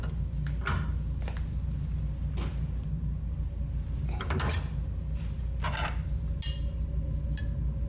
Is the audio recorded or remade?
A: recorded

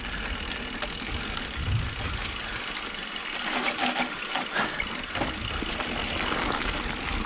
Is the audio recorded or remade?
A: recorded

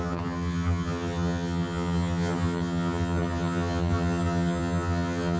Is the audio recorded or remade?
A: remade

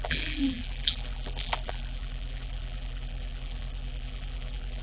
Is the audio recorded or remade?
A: remade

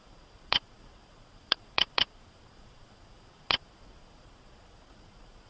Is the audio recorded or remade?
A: remade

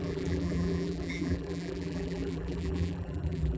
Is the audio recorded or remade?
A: remade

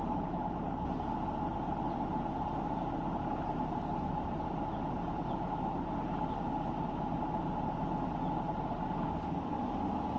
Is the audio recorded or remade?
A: recorded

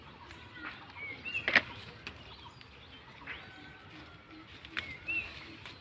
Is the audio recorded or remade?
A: recorded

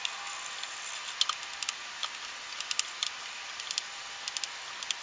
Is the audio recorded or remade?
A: recorded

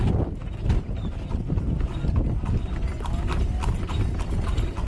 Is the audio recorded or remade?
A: recorded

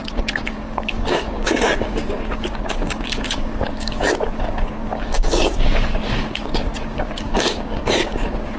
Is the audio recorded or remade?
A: remade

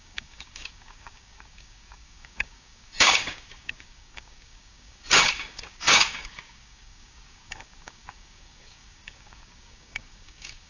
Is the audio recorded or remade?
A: remade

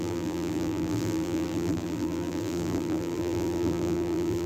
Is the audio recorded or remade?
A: remade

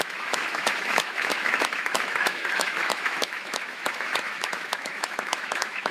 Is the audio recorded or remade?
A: remade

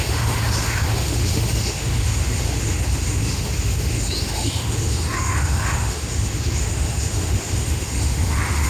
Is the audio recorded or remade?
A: remade